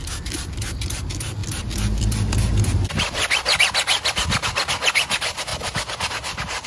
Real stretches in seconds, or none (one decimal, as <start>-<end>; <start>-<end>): 0.0-1.4; 3.6-5.5; 6.1-6.7